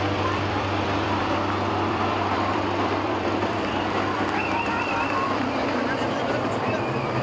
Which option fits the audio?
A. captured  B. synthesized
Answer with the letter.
B